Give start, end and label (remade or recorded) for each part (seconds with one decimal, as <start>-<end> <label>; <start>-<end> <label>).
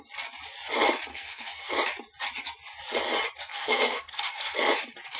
0.0-1.1 recorded; 1.1-1.7 remade; 1.7-3.5 recorded; 3.5-4.5 remade; 4.5-5.2 recorded